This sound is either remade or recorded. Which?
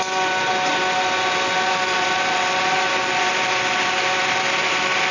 recorded